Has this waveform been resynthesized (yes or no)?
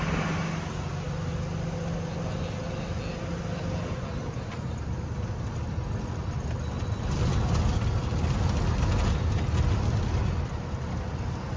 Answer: no